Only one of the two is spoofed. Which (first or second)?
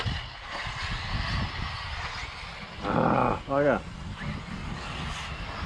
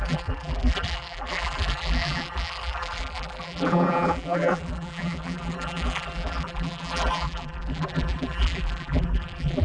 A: second